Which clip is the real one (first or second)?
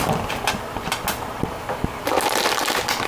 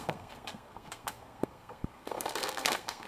first